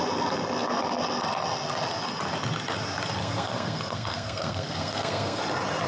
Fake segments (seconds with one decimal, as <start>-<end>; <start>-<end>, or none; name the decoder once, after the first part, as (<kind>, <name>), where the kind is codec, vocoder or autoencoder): 3.2-5.4 (codec, SNAC)